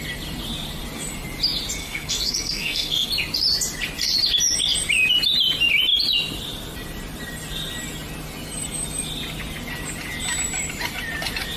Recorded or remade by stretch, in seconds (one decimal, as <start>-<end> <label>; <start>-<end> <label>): 0.0-1.8 recorded; 1.8-3.1 remade; 3.1-11.6 recorded

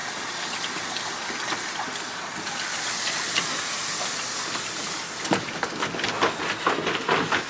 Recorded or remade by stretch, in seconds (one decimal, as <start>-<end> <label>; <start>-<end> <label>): 0.0-7.5 recorded

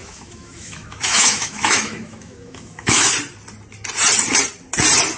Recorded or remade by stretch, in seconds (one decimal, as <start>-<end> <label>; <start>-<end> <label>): 0.0-3.1 remade; 3.1-5.2 recorded

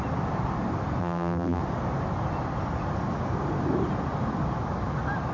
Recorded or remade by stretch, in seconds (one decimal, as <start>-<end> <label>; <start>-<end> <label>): 0.0-1.0 recorded; 1.0-1.6 remade; 1.6-5.3 recorded

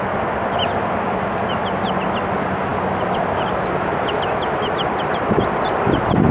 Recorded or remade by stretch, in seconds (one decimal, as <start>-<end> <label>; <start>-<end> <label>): 0.0-6.3 recorded

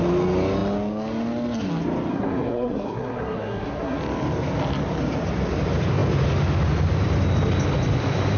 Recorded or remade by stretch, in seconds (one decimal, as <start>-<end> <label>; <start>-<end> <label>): 0.0-2.1 recorded; 2.1-4.0 remade; 4.0-8.4 recorded